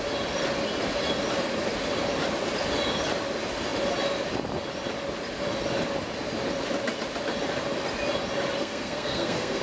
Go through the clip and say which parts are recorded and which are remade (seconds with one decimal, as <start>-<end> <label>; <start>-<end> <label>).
0.0-8.6 recorded; 8.6-9.6 remade